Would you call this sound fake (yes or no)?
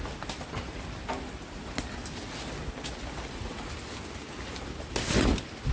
no